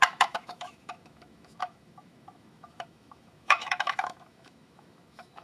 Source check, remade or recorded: remade